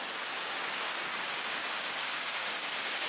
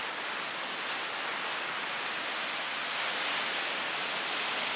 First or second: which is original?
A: second